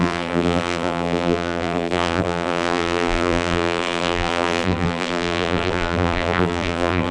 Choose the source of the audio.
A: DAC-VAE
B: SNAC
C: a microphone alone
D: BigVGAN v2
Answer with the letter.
D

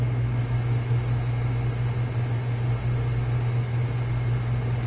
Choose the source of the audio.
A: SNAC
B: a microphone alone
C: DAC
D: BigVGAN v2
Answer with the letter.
B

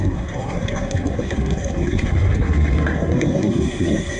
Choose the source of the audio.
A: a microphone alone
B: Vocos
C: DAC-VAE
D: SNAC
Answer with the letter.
D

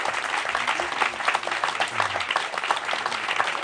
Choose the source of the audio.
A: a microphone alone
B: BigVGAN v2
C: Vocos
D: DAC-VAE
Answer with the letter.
A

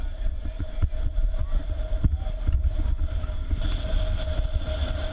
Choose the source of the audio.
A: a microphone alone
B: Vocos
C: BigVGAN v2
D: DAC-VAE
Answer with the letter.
A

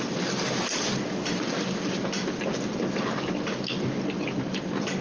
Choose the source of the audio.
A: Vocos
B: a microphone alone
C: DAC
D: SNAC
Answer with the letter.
B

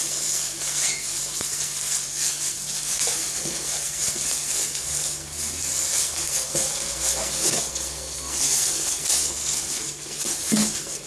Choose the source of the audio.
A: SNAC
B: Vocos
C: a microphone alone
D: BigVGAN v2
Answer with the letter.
A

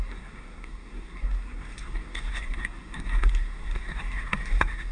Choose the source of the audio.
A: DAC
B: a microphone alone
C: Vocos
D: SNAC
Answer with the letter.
D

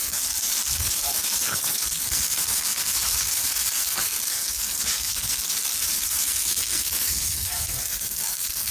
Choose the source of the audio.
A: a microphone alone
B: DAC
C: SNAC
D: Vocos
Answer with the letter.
C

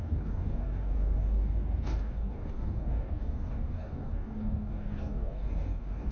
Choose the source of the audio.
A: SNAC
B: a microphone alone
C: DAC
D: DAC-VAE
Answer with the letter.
C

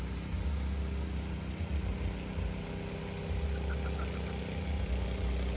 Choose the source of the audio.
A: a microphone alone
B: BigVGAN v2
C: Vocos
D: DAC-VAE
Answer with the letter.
A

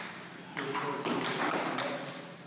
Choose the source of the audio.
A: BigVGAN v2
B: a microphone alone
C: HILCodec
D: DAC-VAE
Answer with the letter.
B